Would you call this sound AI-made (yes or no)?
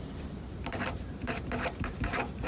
no